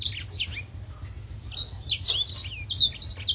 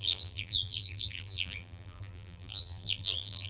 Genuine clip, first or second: first